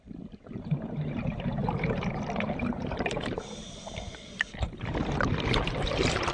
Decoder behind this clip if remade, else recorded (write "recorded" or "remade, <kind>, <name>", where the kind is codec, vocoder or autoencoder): remade, vocoder, BigVGAN v2